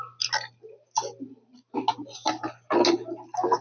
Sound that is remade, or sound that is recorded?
recorded